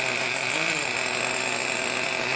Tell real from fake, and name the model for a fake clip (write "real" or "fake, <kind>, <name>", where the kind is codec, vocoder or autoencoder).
real